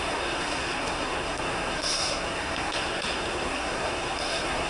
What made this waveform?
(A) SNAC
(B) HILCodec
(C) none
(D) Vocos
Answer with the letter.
A